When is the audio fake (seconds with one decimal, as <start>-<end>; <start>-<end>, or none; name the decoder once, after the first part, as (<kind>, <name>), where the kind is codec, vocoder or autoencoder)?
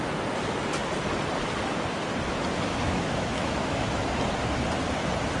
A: 2.7-4.1 (autoencoder, DAC-VAE)